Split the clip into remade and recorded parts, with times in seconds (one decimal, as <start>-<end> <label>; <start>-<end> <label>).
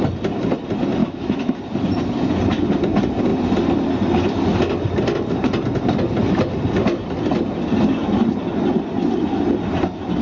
0.0-1.0 recorded; 1.0-1.6 remade; 1.6-10.2 recorded